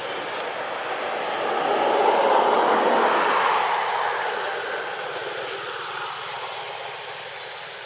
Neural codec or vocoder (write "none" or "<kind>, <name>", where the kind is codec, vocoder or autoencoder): none